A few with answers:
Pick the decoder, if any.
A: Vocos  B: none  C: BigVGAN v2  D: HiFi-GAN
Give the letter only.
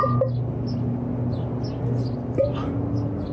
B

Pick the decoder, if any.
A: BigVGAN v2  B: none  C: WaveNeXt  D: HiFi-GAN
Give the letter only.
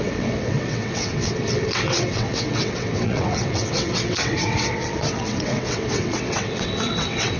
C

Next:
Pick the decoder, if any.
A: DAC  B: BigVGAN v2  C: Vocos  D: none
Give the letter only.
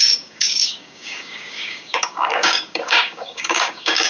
A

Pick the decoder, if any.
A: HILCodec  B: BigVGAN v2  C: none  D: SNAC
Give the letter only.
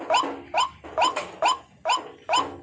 C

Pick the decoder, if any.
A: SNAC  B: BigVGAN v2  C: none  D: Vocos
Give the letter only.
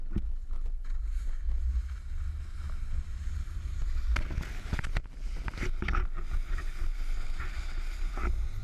C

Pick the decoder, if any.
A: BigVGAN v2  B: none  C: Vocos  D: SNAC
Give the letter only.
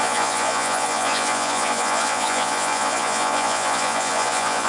C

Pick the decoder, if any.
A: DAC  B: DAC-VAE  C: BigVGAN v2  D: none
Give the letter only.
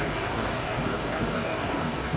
A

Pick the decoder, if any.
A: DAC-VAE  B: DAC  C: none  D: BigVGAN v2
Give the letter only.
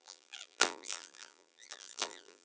D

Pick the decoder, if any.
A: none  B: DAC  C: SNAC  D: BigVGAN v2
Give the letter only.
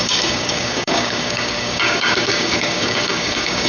B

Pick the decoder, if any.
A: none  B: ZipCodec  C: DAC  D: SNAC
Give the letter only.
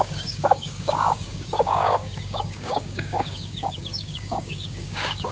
C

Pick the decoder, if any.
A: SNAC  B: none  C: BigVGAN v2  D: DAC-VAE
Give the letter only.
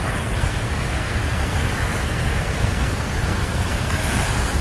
A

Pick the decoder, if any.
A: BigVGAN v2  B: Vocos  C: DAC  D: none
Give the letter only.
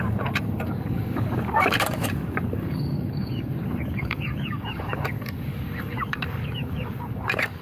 C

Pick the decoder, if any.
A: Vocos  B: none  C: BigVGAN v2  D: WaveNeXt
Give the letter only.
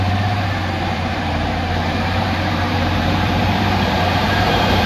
C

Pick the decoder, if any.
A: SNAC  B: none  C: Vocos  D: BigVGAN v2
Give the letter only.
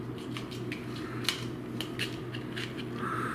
B